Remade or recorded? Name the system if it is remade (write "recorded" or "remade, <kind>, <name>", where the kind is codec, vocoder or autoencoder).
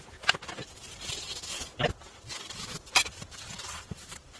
recorded